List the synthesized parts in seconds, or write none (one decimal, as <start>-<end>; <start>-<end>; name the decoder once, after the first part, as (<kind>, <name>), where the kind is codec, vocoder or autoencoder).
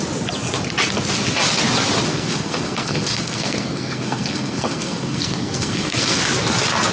2.1-6.2 (codec, SNAC)